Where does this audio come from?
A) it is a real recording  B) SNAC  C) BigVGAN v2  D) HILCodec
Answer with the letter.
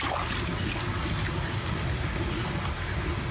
A